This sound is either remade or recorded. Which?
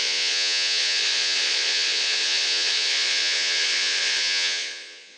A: remade